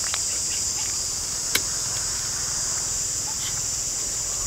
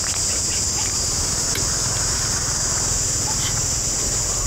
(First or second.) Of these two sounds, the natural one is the second